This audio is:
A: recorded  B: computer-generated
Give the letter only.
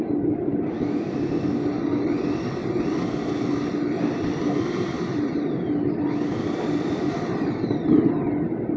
A